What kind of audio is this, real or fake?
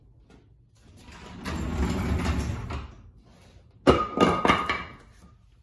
real